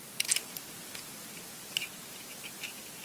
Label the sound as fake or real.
real